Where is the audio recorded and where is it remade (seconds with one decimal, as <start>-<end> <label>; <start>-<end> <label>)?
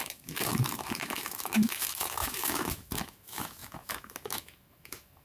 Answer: 0.0-5.2 remade